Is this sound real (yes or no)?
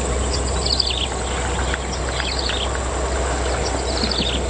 yes